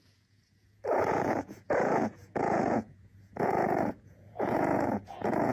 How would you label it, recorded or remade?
remade